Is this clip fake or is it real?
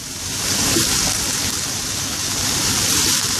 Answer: fake